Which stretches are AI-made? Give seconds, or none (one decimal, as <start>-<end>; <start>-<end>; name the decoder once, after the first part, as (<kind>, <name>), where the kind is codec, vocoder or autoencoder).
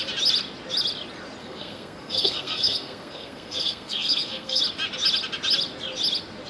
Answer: 1.4-4.6 (codec, SNAC)